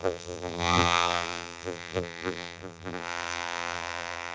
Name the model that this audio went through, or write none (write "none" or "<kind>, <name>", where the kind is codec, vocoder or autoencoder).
vocoder, BigVGAN v2